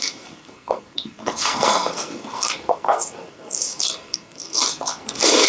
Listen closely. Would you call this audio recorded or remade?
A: remade